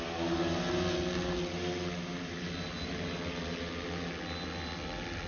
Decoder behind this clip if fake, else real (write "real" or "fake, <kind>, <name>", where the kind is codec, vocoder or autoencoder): real